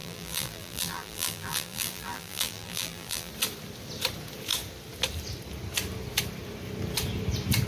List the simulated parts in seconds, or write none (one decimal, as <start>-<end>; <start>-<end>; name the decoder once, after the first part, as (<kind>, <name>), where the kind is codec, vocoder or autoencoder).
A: 0.0-3.3 (vocoder, BigVGAN v2)

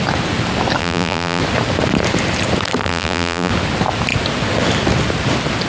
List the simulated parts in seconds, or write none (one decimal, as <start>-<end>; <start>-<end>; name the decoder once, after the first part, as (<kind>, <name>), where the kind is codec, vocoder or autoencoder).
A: 0.8-1.4 (vocoder, BigVGAN v2); 2.8-3.5

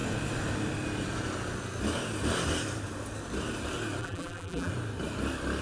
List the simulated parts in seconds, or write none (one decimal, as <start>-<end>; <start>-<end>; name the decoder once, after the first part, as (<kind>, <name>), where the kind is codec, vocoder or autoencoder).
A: 4.0-4.7 (vocoder, BigVGAN v2)

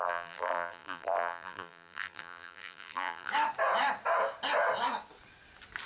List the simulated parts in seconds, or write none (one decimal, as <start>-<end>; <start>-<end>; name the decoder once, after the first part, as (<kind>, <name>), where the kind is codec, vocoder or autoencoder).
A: 0.0-3.3 (vocoder, BigVGAN v2)

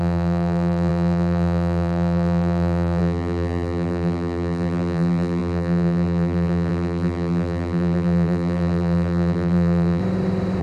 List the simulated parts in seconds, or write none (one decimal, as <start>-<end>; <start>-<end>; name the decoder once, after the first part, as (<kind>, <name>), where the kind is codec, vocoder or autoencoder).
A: 0.0-10.0 (vocoder, BigVGAN v2)

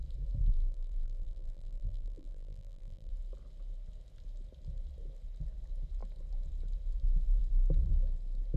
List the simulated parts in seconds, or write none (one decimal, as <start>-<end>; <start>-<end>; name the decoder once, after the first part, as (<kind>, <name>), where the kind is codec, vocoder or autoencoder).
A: 0.4-3.1 (vocoder, BigVGAN v2)

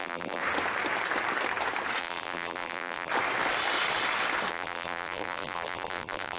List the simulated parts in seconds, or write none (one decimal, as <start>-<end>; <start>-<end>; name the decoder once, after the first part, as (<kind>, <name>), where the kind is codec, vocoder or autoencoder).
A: 0.0-0.4 (vocoder, BigVGAN v2); 2.0-3.1; 4.5-6.4

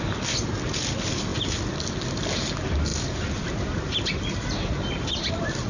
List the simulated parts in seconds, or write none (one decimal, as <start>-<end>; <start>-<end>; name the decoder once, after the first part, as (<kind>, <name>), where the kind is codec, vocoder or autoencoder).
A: 2.9-5.3 (vocoder, BigVGAN v2)